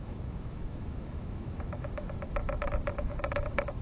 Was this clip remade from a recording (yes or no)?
yes